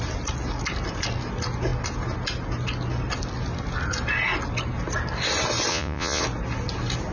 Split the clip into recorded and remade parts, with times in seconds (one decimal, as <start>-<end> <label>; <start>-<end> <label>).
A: 0.0-5.7 recorded; 5.7-6.2 remade; 6.2-7.1 recorded